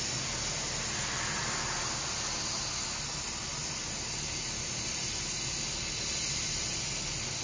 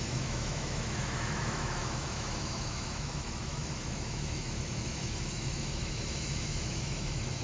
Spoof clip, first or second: second